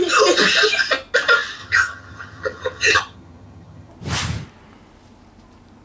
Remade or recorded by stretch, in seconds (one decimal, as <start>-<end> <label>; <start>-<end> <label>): 0.0-1.6 recorded; 1.6-3.9 remade; 3.9-5.8 recorded